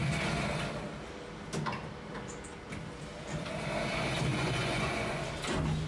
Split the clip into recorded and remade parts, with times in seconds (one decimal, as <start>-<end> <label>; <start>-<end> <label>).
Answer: 0.0-4.3 recorded; 4.3-5.2 remade; 5.2-5.9 recorded

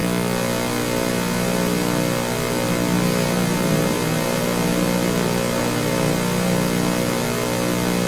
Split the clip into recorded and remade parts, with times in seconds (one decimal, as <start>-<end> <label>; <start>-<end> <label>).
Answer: 0.0-8.1 recorded